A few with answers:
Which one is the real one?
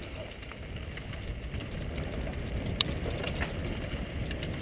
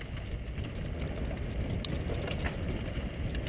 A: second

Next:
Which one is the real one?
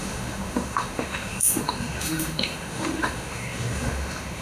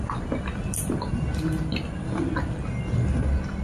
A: second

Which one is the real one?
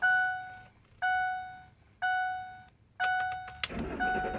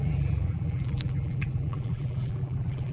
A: first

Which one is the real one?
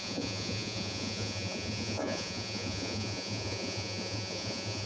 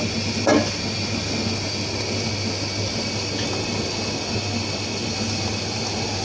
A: second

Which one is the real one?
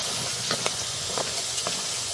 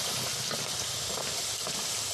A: second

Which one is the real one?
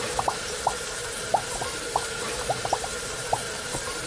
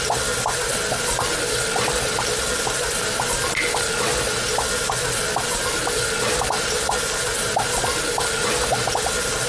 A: second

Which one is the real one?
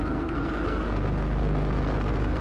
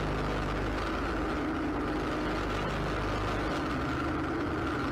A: second